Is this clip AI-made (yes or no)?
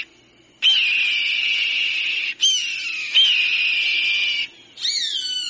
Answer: no